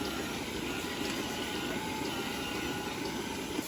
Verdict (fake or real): real